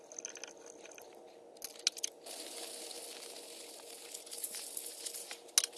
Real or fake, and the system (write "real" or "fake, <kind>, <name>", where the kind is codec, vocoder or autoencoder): real